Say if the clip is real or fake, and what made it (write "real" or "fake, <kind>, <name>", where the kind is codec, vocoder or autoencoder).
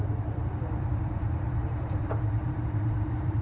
fake, vocoder, BigVGAN v2